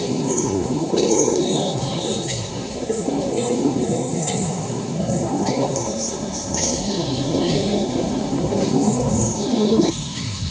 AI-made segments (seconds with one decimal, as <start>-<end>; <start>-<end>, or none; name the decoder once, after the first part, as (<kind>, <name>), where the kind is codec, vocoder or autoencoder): 0.0-10.5 (codec, SNAC)